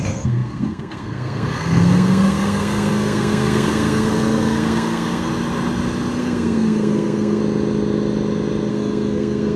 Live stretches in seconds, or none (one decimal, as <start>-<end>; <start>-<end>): 5.3-6.2; 7.4-8.7